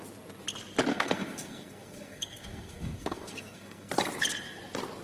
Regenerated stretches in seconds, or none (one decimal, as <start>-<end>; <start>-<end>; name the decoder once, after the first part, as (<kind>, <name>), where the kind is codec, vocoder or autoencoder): 0.9-3.9 (codec, SNAC)